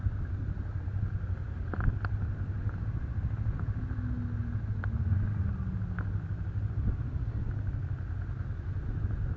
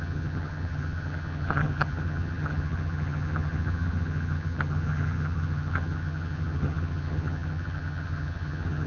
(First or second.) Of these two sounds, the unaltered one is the first